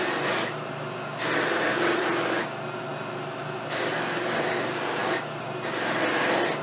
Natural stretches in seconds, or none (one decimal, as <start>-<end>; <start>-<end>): 0.0-6.6